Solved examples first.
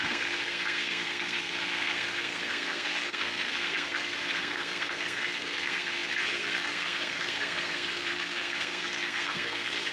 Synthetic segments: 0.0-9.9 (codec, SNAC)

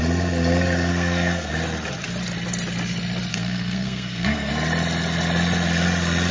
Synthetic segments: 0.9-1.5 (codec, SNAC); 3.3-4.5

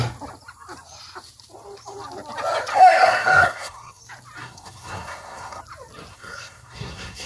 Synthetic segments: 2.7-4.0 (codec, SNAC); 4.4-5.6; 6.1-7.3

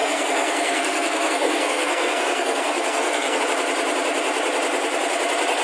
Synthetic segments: 0.0-3.4 (codec, SNAC)